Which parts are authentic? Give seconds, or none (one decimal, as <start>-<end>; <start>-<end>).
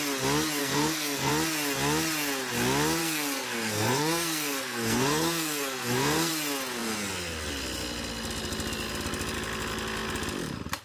0.0-0.6; 1.3-3.0; 6.3-10.8